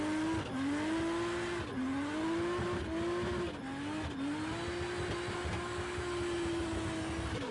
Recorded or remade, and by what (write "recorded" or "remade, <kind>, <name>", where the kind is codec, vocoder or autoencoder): recorded